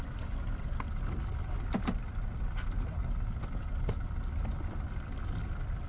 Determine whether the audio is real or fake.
real